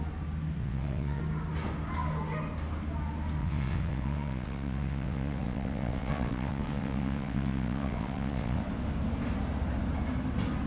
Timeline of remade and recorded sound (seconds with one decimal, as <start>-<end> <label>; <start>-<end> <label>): 0.0-0.6 recorded; 0.6-1.2 remade; 1.2-3.4 recorded; 3.4-8.6 remade; 8.6-10.7 recorded